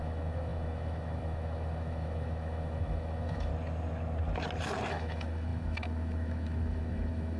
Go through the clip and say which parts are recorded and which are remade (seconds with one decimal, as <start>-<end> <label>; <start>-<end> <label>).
0.0-3.5 remade; 3.5-4.9 recorded; 4.9-7.4 remade